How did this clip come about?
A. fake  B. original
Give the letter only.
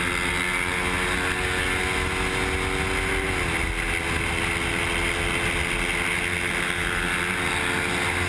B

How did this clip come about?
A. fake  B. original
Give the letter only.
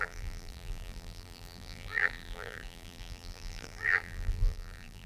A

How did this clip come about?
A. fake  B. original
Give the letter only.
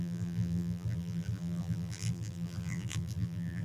A